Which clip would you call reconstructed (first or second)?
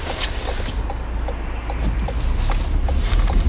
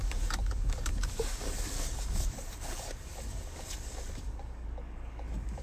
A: second